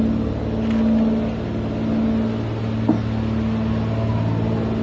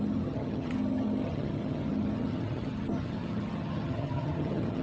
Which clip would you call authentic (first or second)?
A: first